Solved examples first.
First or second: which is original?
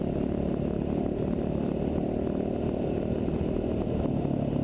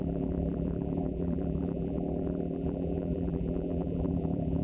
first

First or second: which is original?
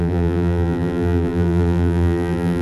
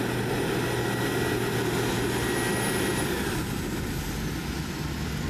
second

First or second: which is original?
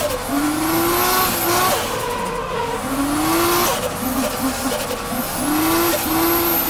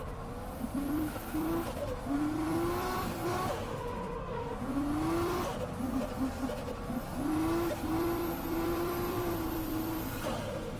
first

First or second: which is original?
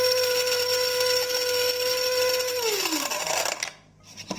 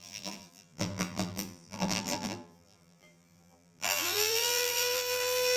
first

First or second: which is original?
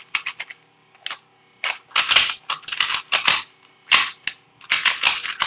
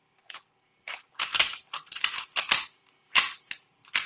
first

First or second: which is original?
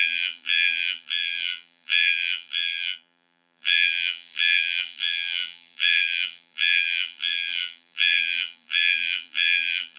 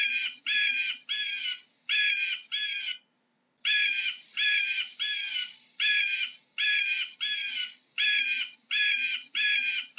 second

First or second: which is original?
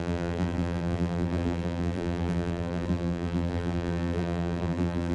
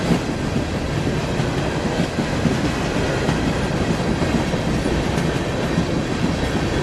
second